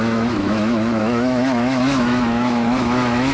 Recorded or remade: remade